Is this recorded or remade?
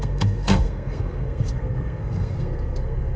remade